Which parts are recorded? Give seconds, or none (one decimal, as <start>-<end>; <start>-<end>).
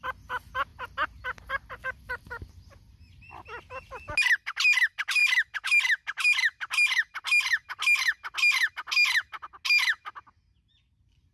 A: 0.0-11.3